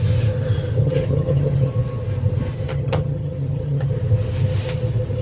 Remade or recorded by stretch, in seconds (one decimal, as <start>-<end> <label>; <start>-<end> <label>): 0.0-0.8 recorded; 0.8-1.7 remade; 1.7-2.7 recorded; 2.7-3.9 remade; 3.9-5.2 recorded